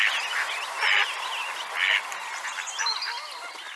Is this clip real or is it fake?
real